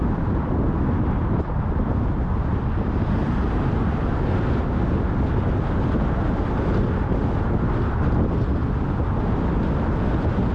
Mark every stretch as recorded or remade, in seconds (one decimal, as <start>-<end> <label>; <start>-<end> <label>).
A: 0.0-10.5 recorded